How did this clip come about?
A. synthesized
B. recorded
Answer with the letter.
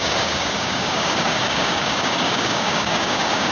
A